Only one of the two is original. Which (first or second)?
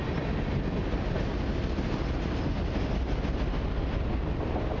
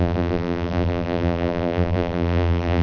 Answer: first